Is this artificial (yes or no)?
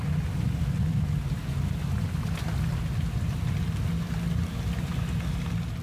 no